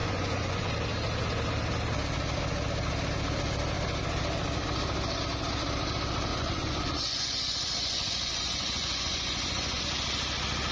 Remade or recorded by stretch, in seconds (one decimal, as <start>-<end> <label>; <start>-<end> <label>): 0.0-0.7 remade; 0.7-6.3 recorded; 6.3-9.8 remade; 9.8-10.7 recorded